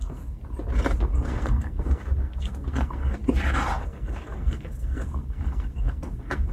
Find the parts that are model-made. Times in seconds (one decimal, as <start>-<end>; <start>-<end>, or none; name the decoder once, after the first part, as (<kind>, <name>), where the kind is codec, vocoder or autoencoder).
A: 0.0-0.4 (codec, SNAC); 1.0-3.2; 3.8-6.5